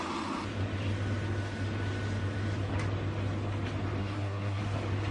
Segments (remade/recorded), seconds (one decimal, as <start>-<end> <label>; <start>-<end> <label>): 0.0-4.0 recorded; 4.0-4.6 remade; 4.6-5.1 recorded